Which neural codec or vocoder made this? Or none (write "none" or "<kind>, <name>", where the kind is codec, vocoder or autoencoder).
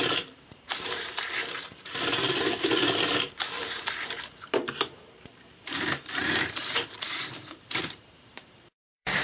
vocoder, BigVGAN v2